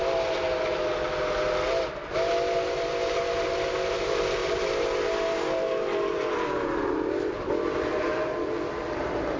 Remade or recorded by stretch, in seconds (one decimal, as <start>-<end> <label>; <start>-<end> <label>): 0.0-9.4 recorded